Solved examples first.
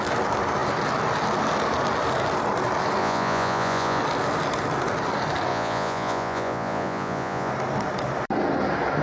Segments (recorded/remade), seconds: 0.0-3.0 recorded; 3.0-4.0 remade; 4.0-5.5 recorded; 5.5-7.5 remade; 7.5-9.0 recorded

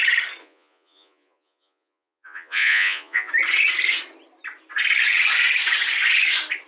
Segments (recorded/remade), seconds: 0.0-0.4 recorded; 0.4-3.3 remade; 3.3-6.7 recorded

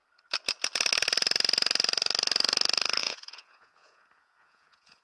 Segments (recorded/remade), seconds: 0.0-3.0 recorded; 3.0-5.0 remade